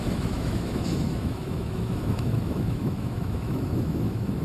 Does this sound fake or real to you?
fake